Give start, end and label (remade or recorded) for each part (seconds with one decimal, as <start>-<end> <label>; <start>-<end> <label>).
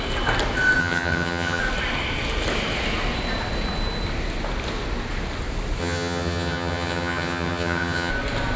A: 0.0-0.8 recorded; 0.8-1.6 remade; 1.6-5.8 recorded; 5.8-8.1 remade; 8.1-8.6 recorded